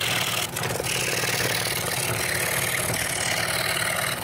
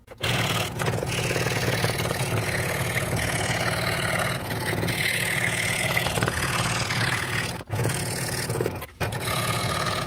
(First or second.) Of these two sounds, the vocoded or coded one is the second